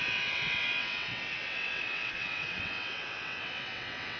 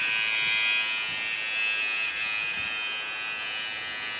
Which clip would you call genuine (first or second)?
second